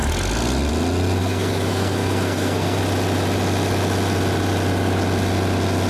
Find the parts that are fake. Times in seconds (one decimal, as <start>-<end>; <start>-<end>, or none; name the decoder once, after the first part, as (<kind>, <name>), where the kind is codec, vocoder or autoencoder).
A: 1.2-2.8 (codec, SNAC)